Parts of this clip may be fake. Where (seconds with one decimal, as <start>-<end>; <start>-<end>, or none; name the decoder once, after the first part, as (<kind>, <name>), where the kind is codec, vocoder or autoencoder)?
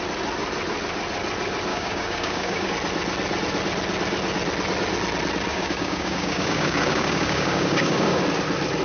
1.7-2.7 (codec, DAC); 5.5-8.2